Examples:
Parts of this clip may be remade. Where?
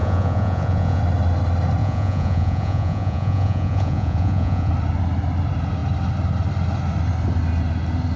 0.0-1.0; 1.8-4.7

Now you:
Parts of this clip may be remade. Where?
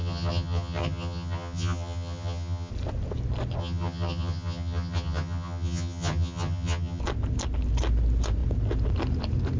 0.0-2.7; 3.6-7.0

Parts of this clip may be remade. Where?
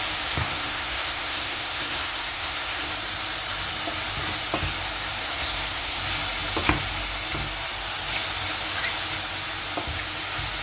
0.4-2.9; 5.2-6.0